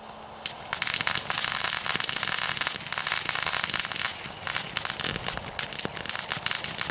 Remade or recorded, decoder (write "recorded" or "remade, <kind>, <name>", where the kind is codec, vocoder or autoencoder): recorded